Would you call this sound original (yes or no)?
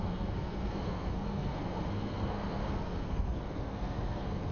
no